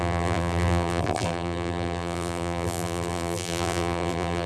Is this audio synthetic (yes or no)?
yes